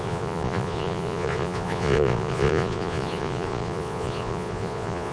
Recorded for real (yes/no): no